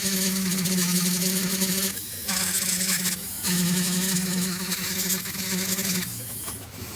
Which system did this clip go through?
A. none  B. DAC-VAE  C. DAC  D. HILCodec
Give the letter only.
B